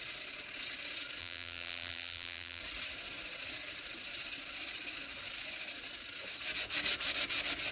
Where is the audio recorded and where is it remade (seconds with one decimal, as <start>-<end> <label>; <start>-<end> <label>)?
0.0-1.2 recorded; 1.2-2.6 remade; 2.6-7.7 recorded